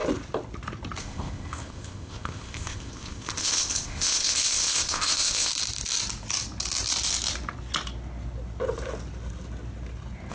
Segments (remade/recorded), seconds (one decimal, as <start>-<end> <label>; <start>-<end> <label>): 0.0-1.0 recorded; 1.0-5.5 remade; 5.5-10.3 recorded